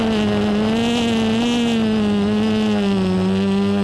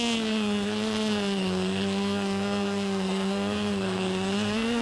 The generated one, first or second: second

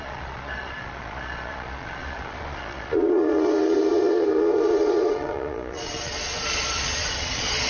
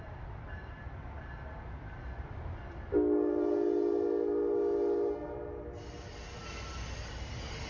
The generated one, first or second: first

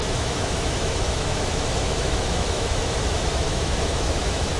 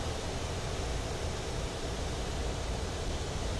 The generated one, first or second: first